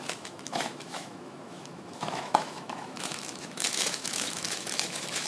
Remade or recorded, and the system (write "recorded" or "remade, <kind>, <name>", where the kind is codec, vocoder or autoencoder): remade, autoencoder, DAC-VAE